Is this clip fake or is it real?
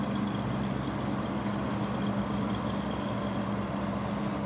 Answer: real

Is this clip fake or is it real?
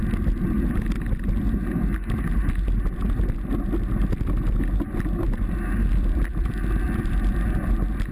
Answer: real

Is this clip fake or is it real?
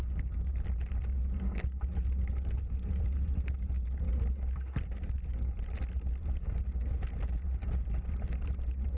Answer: real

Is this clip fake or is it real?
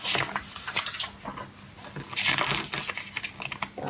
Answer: real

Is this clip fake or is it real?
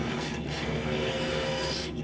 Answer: fake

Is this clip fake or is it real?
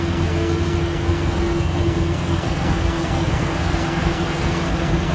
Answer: fake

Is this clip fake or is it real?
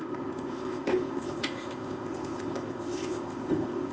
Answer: fake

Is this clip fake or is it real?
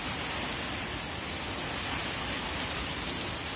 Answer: real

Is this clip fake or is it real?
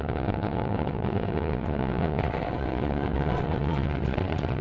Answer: fake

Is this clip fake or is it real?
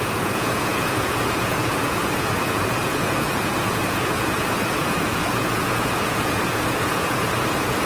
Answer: fake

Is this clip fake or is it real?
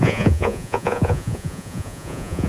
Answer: fake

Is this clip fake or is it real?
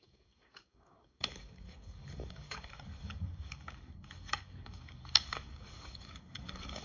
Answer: fake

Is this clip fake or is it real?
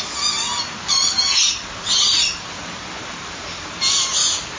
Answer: real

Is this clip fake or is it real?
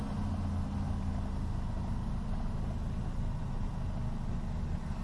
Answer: real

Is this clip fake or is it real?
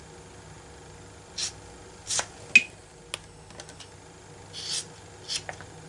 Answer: real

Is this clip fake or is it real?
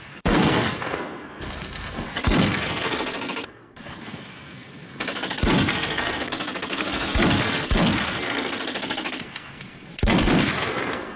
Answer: fake